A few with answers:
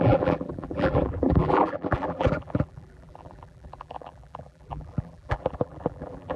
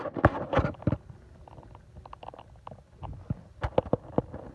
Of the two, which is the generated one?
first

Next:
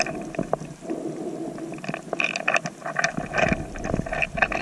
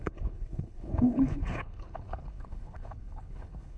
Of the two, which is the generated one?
second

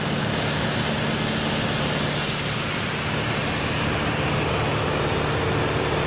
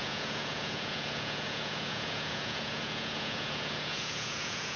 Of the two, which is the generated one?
second